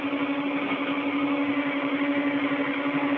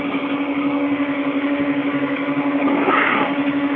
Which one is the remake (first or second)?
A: second